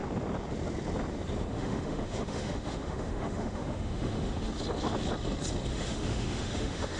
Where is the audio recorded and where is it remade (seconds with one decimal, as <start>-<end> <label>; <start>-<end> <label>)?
0.0-1.5 recorded; 1.5-4.5 remade; 4.5-5.7 recorded; 5.7-7.0 remade